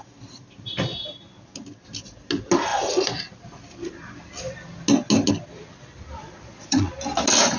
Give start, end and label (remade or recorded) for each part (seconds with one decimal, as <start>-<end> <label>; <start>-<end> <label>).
0.0-6.2 recorded; 6.2-6.9 remade; 6.9-7.6 recorded